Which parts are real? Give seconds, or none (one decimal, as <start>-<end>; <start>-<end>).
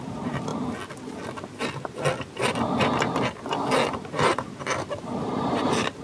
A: 0.5-4.1